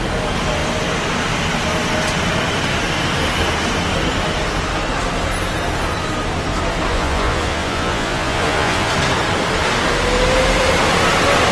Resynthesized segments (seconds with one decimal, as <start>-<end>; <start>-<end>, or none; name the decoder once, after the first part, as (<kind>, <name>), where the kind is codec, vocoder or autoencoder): 6.9-8.9 (vocoder, Vocos)